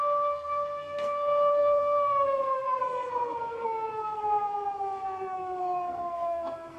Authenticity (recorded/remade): remade